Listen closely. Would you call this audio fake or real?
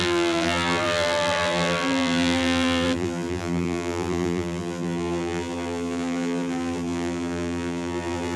fake